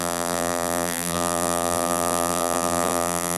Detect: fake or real fake